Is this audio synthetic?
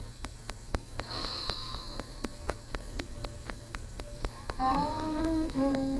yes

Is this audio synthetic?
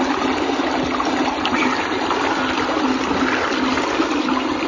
no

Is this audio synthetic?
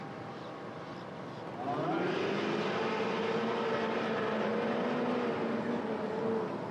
no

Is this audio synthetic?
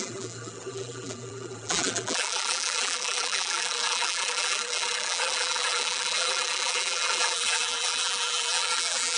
yes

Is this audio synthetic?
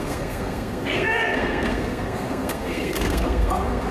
yes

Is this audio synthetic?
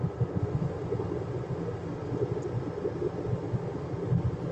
no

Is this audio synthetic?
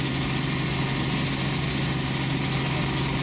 no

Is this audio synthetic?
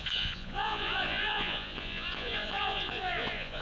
yes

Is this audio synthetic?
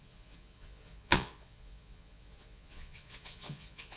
yes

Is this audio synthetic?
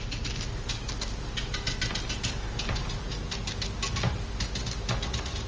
no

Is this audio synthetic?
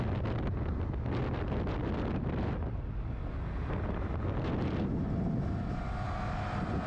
no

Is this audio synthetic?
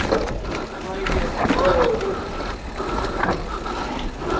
no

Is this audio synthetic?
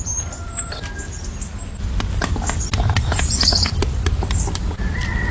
no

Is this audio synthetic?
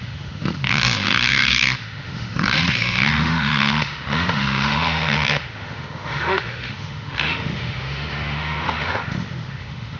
yes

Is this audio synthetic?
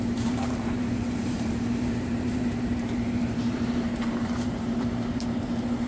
yes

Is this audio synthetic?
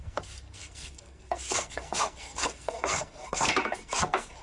yes